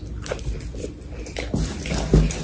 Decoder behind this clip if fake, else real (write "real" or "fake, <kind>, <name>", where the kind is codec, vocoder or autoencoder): real